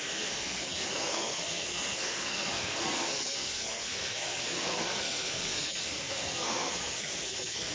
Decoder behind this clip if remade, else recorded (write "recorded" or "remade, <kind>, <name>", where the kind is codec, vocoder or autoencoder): remade, codec, SNAC